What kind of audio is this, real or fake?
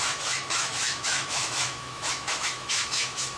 fake